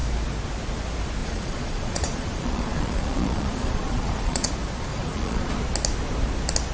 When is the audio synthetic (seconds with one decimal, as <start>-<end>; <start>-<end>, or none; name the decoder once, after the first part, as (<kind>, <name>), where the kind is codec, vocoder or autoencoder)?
1.2-4.5 (vocoder, Vocos); 4.9-5.5